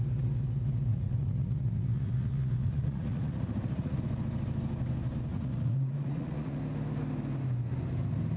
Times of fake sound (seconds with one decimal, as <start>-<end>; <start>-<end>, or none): 0.9-4.0; 5.3-6.6

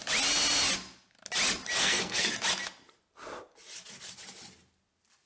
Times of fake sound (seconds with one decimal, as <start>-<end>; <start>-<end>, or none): 1.8-2.3

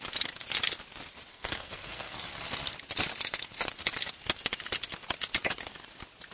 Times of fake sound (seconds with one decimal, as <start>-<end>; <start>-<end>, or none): 1.3-2.2

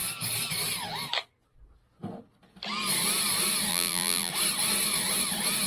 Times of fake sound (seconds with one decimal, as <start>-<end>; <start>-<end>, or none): 3.7-4.3

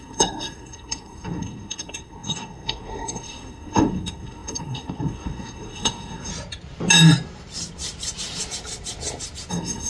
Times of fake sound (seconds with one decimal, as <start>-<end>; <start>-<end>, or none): 0.0-6.3; 9.5-9.9